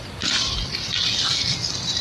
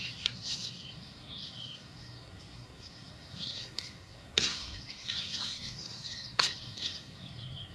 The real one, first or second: first